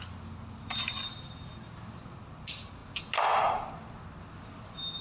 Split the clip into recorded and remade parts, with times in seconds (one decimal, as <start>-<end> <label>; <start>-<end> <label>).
0.0-5.0 recorded